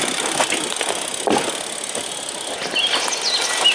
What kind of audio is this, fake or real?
real